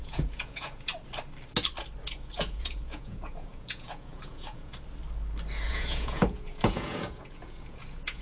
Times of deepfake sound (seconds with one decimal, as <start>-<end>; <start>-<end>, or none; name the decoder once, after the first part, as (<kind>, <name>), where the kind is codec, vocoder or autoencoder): 0.0-0.9 (vocoder, Vocos); 2.1-4.7; 5.7-8.2